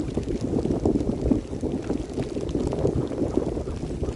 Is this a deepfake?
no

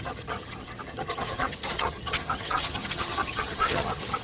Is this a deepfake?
yes